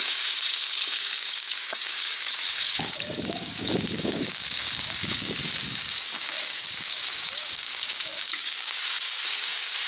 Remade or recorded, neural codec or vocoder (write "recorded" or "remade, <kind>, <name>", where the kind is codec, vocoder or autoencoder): remade, codec, DAC